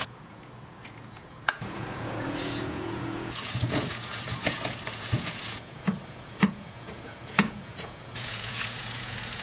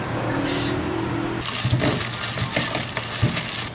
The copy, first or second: first